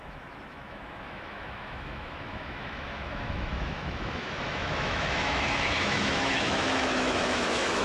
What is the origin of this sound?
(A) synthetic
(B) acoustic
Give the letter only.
A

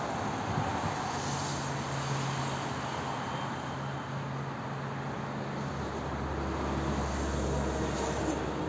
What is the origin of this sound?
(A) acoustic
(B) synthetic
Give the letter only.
A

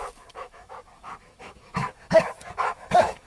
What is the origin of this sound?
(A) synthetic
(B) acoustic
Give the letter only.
A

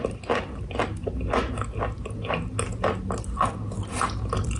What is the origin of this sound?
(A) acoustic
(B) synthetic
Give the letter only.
A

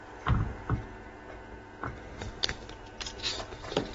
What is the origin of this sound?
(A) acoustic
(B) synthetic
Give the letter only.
A